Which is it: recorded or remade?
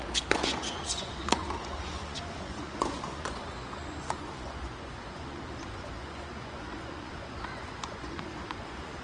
remade